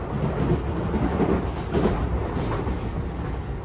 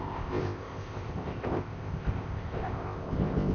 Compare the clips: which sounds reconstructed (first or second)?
second